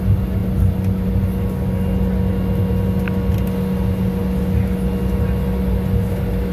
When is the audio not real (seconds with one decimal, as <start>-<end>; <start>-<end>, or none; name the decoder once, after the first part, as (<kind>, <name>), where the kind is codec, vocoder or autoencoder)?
none